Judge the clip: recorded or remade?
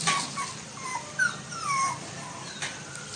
recorded